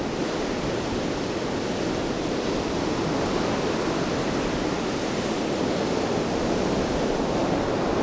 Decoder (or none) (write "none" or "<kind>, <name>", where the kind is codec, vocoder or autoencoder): none